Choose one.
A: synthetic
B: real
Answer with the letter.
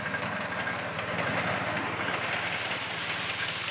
B